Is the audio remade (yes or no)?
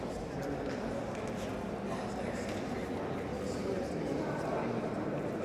no